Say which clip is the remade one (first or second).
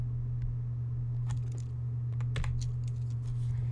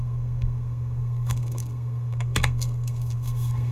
second